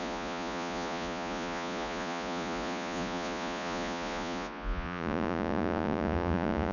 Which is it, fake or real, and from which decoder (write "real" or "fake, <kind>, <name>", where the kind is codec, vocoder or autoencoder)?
fake, vocoder, Vocos